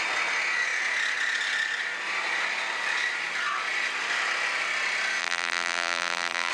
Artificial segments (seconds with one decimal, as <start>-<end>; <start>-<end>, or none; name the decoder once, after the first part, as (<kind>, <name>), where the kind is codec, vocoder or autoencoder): 5.2-6.5 (vocoder, BigVGAN v2)